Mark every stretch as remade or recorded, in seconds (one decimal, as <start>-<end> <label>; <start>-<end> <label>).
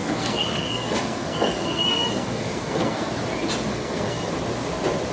0.0-3.1 remade; 3.1-3.7 recorded; 3.7-4.3 remade; 4.3-5.1 recorded